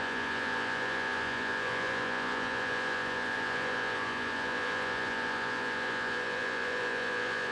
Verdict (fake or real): fake